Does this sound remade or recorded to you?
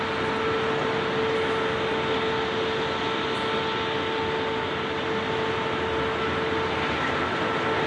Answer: recorded